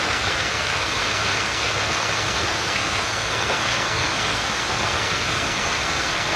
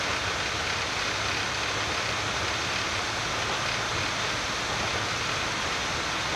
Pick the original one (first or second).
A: second